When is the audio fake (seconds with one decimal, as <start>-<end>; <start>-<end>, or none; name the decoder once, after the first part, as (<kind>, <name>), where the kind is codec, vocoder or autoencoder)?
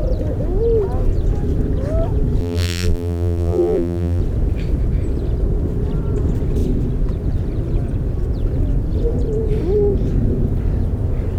2.4-4.2 (vocoder, BigVGAN v2)